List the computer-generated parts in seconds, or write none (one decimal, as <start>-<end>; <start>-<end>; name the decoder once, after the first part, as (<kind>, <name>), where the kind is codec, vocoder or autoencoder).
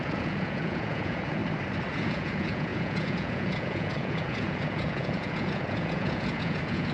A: 0.0-1.4 (vocoder, Vocos); 1.9-6.9